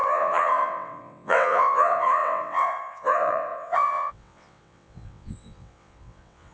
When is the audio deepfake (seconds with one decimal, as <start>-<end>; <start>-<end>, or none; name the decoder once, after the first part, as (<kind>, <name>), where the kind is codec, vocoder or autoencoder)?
0.0-6.5 (vocoder, WaveNeXt)

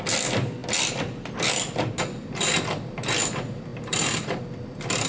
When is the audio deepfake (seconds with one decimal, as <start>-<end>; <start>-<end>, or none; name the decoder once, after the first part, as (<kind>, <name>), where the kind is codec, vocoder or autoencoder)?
3.7-4.4 (vocoder, BigVGAN v2)

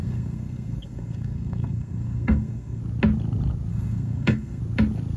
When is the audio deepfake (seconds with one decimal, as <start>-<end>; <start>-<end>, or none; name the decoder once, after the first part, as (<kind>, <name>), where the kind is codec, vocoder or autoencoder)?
0.0-2.8 (codec, SNAC); 3.7-4.6

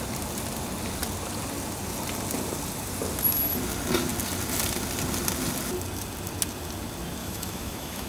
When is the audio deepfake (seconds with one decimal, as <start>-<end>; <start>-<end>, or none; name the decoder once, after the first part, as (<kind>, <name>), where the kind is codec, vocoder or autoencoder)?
7.2-8.1 (autoencoder, DAC-VAE)

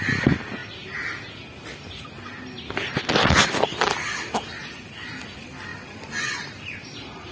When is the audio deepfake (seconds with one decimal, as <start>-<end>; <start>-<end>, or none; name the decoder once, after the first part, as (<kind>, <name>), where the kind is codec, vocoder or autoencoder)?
5.7-7.3 (vocoder, BigVGAN v2)

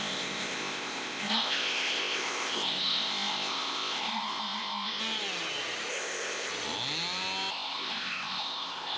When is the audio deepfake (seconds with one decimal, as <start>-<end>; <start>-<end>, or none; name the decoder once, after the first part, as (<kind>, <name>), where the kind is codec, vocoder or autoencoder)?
0.0-5.0 (codec, ZipCodec); 5.9-6.5; 7.5-9.0

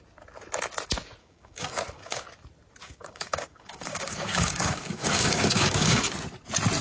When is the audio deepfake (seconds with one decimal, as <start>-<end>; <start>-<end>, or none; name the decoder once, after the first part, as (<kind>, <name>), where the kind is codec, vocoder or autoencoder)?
1.2-2.2 (codec, DAC); 2.8-6.1